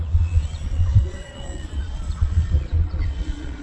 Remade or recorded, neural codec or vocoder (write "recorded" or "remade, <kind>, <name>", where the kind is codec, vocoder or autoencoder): remade, vocoder, Vocos